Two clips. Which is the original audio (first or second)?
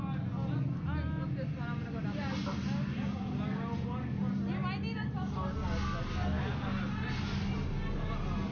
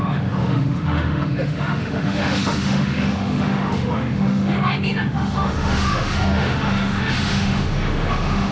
first